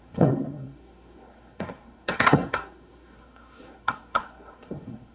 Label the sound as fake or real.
fake